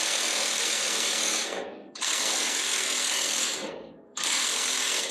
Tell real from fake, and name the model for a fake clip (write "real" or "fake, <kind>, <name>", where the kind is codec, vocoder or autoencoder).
fake, codec, SNAC